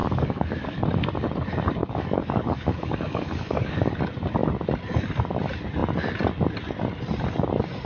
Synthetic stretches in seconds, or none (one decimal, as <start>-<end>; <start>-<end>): 0.0-0.8; 1.8-3.9